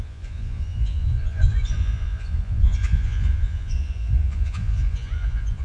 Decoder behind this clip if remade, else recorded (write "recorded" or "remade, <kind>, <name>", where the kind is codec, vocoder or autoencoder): remade, vocoder, Vocos